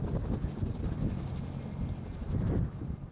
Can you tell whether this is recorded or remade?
recorded